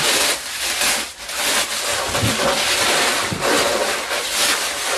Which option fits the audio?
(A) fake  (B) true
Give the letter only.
B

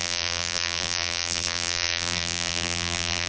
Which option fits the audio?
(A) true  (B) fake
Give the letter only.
B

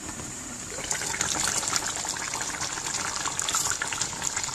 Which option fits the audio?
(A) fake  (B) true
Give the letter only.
B